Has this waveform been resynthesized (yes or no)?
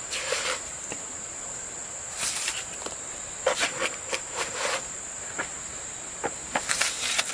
yes